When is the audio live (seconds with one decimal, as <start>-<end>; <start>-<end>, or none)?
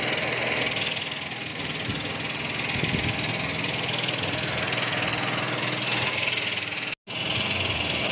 0.0-8.1